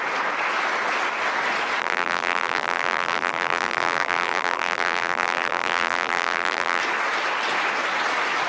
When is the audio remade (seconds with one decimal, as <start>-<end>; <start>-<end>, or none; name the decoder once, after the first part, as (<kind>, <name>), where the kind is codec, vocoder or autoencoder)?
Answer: 1.8-6.8 (vocoder, BigVGAN v2)